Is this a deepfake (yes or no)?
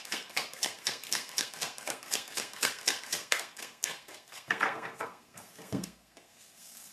yes